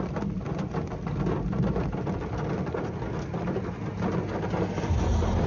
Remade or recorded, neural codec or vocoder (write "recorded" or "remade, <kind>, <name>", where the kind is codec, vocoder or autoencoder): recorded